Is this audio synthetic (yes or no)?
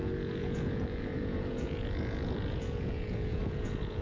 yes